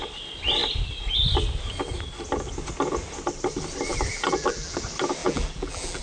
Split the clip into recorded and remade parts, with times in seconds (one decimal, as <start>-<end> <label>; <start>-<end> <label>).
0.0-3.9 recorded; 3.9-4.8 remade; 4.8-5.2 recorded; 5.2-6.0 remade

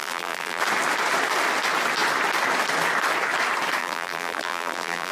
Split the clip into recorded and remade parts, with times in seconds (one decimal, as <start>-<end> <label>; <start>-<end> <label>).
0.0-0.6 remade; 0.6-3.8 recorded; 3.8-5.1 remade

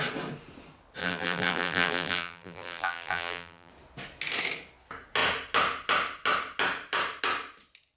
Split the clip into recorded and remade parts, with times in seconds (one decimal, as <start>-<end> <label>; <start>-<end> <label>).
0.0-1.0 recorded; 1.0-3.7 remade; 3.7-8.0 recorded

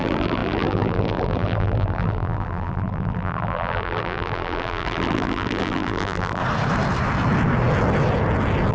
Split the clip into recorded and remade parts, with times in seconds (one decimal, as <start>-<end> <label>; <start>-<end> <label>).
0.0-6.4 remade; 6.4-8.7 recorded

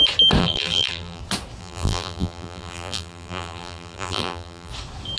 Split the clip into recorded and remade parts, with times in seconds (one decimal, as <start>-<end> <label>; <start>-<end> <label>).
0.0-0.4 recorded; 0.4-1.2 remade; 1.2-1.6 recorded; 1.6-4.7 remade; 4.7-5.2 recorded

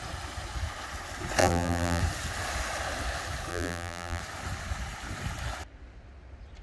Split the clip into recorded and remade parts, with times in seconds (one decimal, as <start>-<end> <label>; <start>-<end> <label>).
0.0-1.4 recorded; 1.4-2.0 remade; 2.0-3.5 recorded; 3.5-4.2 remade; 4.2-6.6 recorded

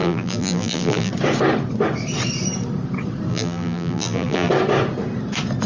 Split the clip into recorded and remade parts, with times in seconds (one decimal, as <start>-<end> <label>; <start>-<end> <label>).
0.0-1.1 remade; 1.1-3.3 recorded; 3.3-4.5 remade; 4.5-5.7 recorded

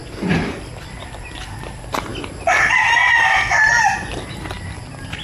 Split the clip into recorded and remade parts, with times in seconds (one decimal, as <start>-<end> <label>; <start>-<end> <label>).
0.0-0.7 remade; 0.7-5.2 recorded